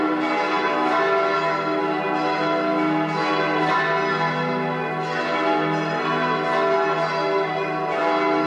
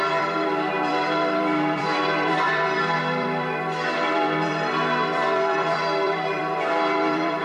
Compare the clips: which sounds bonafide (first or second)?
first